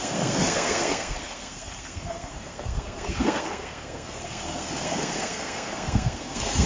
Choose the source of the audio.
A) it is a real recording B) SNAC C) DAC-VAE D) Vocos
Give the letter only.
B